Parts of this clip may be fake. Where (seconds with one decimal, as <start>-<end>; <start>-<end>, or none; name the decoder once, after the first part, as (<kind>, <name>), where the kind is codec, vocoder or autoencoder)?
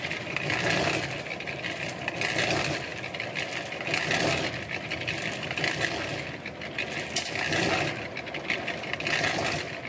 none